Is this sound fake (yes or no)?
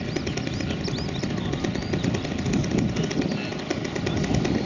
no